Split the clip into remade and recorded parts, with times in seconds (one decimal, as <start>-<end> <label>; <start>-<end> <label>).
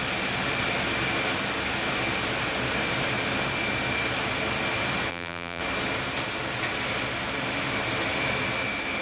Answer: 0.0-5.1 recorded; 5.1-5.6 remade; 5.6-9.0 recorded